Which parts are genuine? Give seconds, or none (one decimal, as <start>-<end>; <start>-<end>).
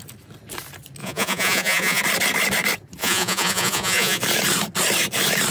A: 0.0-1.0; 2.0-3.0; 4.2-5.5